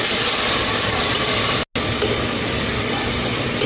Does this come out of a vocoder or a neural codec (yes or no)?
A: no